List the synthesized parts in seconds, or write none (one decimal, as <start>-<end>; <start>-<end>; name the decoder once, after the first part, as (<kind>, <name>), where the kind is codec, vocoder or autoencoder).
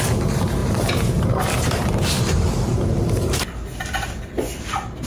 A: 0.6-3.4 (vocoder, BigVGAN v2)